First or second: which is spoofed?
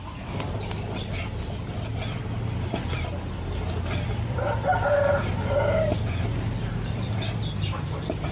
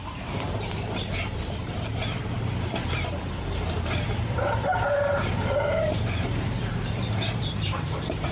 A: second